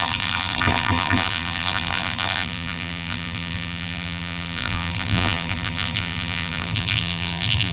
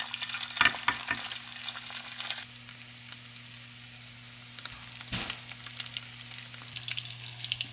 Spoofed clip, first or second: first